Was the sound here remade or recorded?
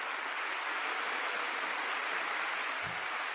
recorded